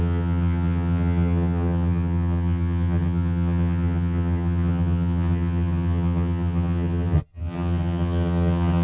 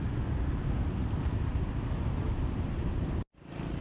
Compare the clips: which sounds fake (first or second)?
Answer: first